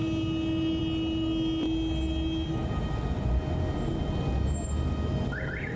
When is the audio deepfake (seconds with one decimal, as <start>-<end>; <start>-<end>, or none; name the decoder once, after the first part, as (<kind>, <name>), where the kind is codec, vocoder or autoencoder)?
none